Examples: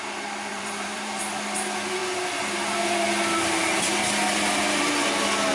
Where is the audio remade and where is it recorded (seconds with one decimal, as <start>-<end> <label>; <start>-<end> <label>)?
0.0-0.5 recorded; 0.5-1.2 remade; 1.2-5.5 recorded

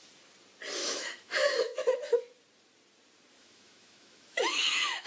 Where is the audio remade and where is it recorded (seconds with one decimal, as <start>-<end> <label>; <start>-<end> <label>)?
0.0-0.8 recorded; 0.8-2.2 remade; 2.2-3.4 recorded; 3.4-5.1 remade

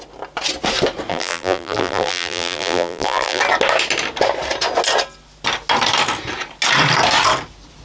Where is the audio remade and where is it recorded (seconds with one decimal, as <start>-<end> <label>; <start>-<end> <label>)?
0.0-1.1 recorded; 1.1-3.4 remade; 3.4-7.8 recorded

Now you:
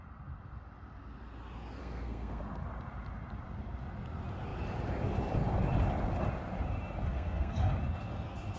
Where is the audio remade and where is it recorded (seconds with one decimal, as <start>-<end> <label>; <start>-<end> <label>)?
0.0-1.8 recorded; 1.8-2.4 remade; 2.4-7.1 recorded; 7.1-7.7 remade; 7.7-8.6 recorded

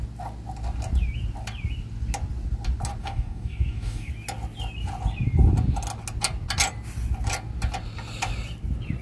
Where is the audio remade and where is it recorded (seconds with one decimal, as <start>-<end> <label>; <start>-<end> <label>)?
0.0-3.0 recorded; 3.0-4.1 remade; 4.1-9.0 recorded